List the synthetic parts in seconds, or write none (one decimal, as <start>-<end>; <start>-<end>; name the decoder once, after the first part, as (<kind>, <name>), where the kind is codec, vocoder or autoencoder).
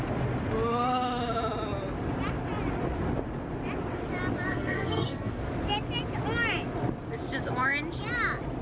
4.5-5.4 (codec, SNAC)